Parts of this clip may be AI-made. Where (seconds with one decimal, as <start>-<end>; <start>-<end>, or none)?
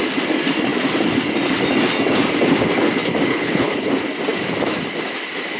3.3-3.9